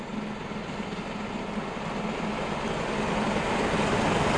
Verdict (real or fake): real